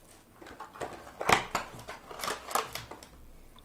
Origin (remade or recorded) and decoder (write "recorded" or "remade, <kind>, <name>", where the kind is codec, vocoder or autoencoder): recorded